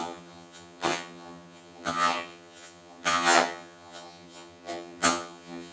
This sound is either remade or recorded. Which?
remade